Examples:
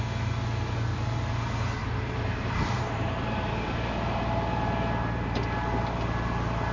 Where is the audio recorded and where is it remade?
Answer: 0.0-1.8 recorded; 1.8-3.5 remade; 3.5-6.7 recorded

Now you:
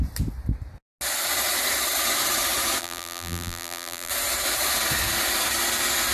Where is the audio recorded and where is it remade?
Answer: 0.0-2.8 recorded; 2.8-4.1 remade; 4.1-6.1 recorded

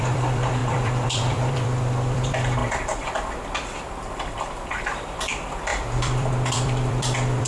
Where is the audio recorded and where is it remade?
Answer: 0.0-7.5 remade

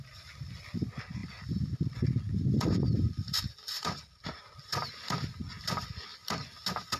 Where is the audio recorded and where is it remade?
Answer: 0.0-1.2 recorded; 1.2-4.9 remade; 4.9-7.0 recorded